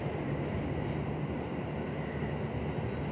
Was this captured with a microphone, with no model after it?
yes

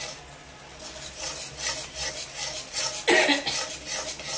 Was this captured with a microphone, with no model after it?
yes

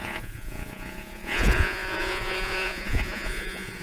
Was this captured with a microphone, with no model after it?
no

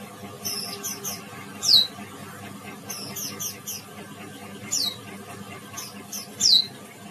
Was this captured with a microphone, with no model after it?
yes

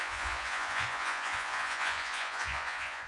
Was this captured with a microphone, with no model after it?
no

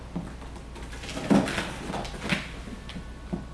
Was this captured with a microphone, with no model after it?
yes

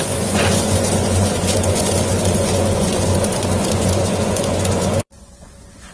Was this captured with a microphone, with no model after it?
no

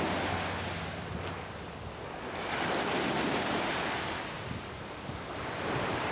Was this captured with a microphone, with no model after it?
yes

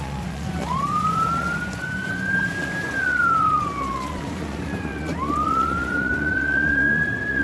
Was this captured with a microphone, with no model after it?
no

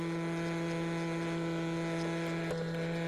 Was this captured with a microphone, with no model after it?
yes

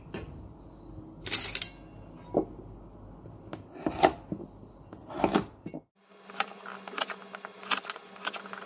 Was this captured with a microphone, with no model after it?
yes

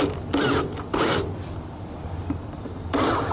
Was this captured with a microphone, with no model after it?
yes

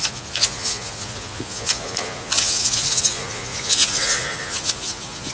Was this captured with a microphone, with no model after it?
no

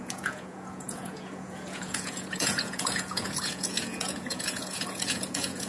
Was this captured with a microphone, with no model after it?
no